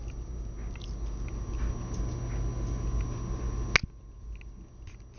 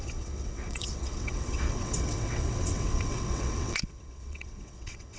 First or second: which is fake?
second